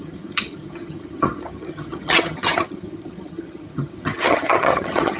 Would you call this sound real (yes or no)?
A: no